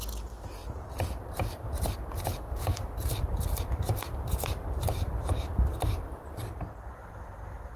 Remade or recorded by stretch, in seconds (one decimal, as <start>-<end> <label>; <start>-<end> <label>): 0.0-0.6 recorded; 0.6-5.3 remade; 5.3-7.8 recorded